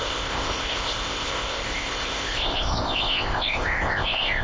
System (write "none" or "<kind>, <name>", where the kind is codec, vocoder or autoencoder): codec, ZipCodec